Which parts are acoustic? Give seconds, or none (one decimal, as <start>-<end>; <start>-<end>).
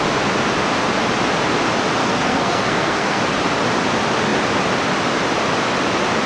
0.0-2.0; 3.2-6.3